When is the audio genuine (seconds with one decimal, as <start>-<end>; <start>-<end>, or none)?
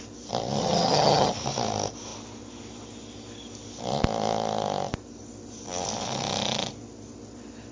0.0-0.6; 1.3-7.7